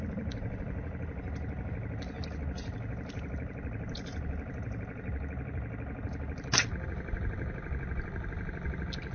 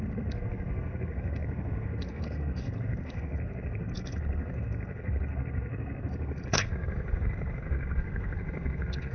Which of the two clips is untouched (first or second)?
first